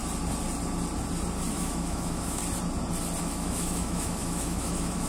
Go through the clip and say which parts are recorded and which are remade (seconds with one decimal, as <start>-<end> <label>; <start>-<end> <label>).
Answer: 0.0-1.5 recorded; 1.5-2.4 remade; 2.4-3.2 recorded; 3.2-5.1 remade